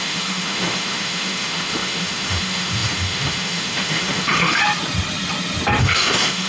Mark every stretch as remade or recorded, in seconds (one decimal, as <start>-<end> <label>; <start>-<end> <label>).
0.0-4.6 remade; 4.6-5.8 recorded; 5.8-6.5 remade